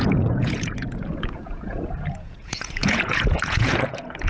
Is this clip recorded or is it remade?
remade